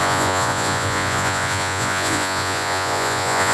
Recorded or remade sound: remade